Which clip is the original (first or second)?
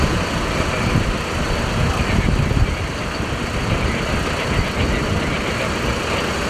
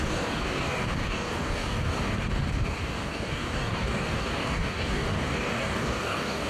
first